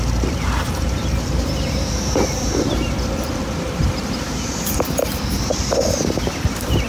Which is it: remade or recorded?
remade